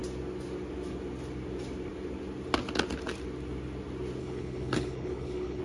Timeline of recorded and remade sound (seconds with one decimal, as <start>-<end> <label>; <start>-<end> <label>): 0.0-4.2 recorded; 4.2-5.6 remade